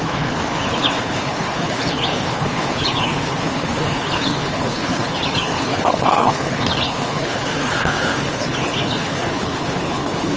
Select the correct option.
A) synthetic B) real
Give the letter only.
A